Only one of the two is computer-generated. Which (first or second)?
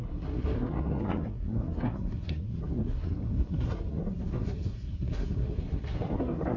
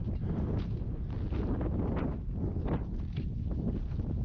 first